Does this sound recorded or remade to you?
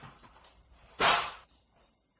remade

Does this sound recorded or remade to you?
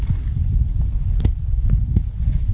recorded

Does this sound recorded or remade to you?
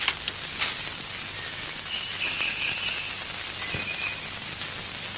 recorded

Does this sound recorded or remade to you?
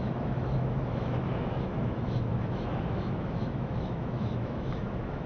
remade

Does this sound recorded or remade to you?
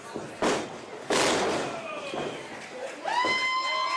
recorded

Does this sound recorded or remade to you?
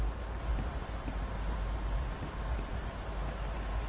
recorded